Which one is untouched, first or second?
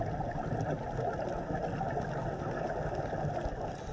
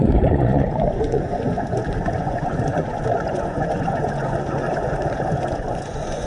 first